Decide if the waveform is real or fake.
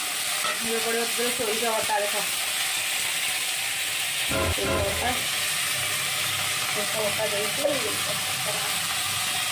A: real